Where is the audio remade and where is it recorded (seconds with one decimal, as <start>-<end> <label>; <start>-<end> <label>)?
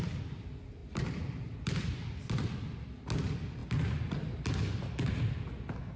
0.0-0.8 recorded; 0.8-1.8 remade; 1.8-6.0 recorded